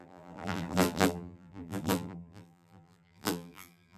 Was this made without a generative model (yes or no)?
no